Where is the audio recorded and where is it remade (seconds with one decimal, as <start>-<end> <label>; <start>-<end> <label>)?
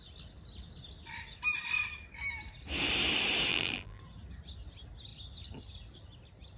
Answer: 0.0-3.5 recorded; 3.5-4.0 remade; 4.0-6.6 recorded